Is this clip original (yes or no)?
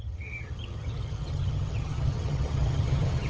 no